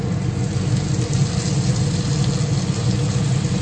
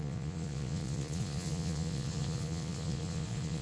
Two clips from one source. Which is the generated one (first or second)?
second